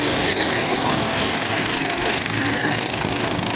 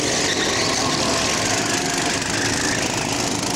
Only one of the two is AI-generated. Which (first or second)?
first